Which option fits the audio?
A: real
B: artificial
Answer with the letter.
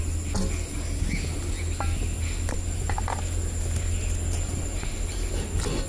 A